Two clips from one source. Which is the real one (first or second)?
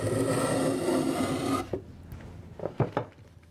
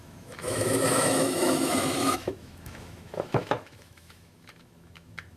first